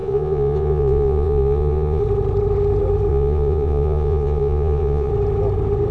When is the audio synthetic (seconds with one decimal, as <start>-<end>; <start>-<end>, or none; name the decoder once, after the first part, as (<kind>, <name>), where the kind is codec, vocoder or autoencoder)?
0.0-2.0 (vocoder, Vocos); 3.1-5.1